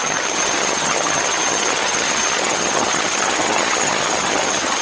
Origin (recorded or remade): remade